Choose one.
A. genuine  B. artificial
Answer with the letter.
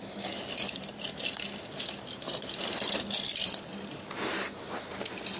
A